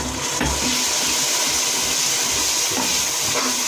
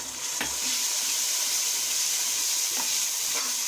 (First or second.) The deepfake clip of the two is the second